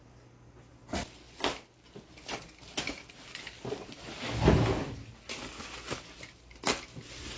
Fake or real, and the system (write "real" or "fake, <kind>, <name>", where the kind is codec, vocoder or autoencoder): real